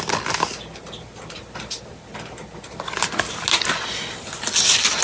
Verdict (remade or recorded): recorded